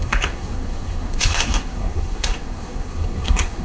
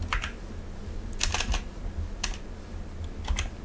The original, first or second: second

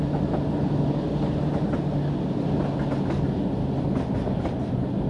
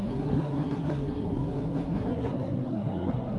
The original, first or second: first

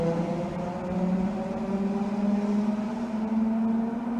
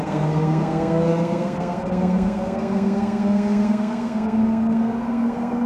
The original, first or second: first